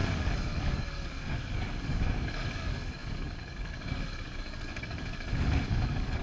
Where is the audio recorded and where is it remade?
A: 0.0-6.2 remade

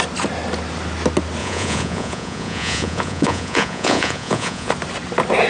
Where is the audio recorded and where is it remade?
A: 0.0-1.4 recorded; 1.4-4.7 remade; 4.7-5.5 recorded

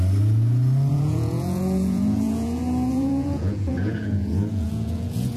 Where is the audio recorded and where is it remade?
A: 0.0-0.9 recorded; 0.9-5.4 remade

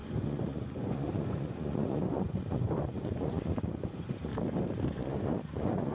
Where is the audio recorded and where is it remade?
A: 0.0-4.3 remade; 4.3-4.9 recorded; 4.9-5.9 remade

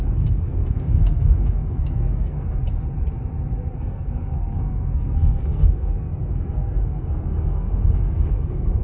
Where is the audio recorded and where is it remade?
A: 0.0-2.6 remade; 2.6-3.7 recorded; 3.7-8.8 remade

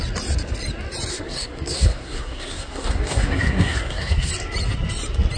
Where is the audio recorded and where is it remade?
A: 0.0-1.1 recorded; 1.1-4.3 remade; 4.3-5.4 recorded